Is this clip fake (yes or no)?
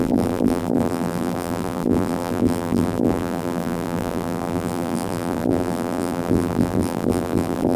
yes